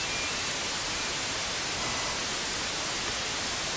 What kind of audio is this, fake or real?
real